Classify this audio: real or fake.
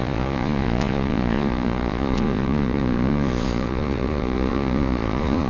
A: fake